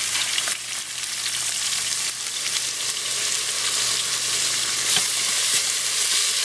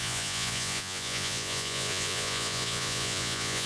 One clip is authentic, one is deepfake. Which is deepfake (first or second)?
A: second